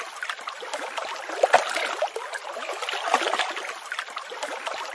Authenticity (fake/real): real